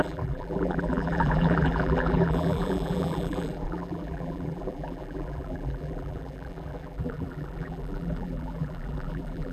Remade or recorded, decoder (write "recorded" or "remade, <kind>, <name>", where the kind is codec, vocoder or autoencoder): remade, vocoder, BigVGAN v2